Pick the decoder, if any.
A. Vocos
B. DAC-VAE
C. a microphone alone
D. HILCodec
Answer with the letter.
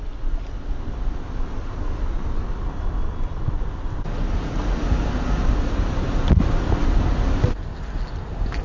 C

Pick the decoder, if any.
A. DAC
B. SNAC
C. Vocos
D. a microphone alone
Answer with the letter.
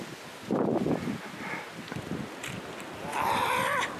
D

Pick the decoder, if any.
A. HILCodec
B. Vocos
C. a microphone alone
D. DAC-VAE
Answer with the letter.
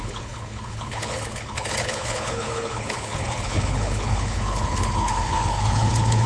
A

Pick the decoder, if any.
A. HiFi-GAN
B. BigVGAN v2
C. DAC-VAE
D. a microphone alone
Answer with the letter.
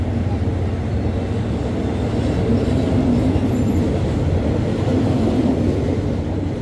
D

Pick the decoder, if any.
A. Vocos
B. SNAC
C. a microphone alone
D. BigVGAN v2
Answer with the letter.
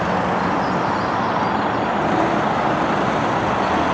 C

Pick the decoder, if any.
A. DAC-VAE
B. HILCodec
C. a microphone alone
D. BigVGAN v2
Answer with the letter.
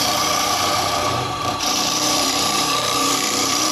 D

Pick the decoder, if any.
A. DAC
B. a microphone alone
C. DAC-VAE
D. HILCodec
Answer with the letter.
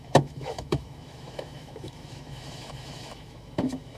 C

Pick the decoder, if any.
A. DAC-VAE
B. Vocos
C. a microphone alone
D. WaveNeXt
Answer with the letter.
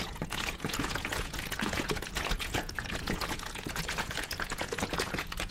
B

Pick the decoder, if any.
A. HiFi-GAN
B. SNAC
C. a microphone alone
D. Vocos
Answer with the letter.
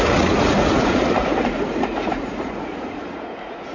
D